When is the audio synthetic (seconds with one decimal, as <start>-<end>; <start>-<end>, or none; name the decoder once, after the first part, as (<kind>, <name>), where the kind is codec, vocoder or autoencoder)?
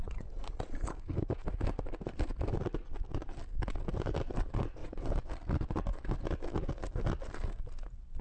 4.8-5.3 (vocoder, WaveNeXt)